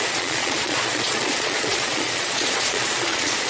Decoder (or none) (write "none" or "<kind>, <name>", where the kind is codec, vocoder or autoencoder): vocoder, Vocos